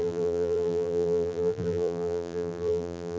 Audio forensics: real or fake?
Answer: fake